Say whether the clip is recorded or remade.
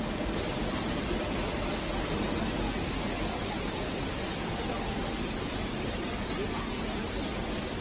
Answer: recorded